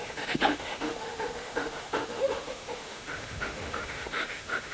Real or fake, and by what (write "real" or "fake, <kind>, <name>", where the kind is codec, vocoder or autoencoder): fake, autoencoder, DAC-VAE